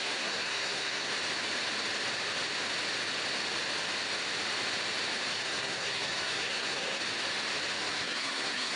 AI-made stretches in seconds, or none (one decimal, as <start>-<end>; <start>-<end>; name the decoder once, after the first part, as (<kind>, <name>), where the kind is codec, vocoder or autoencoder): 0.0-1.1 (codec, SNAC); 5.3-7.0; 7.8-8.8